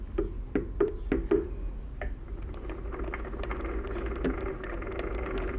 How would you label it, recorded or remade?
recorded